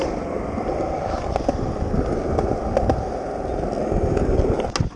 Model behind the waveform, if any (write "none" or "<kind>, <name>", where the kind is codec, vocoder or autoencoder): none